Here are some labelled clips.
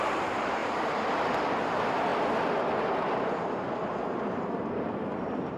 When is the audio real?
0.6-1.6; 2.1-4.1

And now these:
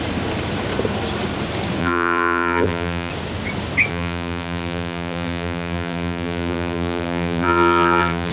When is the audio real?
0.0-1.8; 3.1-3.9

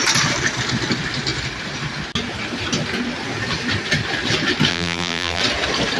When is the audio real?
0.0-4.7; 5.4-6.0

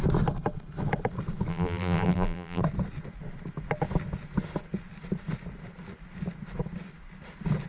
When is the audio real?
0.0-1.5; 2.6-7.7

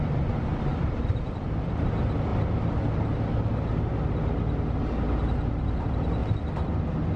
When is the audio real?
2.3-5.8; 6.2-7.2